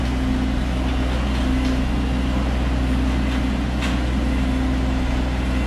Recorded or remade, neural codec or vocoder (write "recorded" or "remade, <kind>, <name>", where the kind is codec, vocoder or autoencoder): recorded